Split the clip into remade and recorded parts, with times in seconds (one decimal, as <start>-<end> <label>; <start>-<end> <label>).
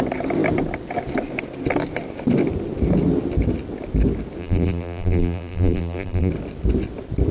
0.0-4.4 recorded; 4.4-6.3 remade; 6.3-7.3 recorded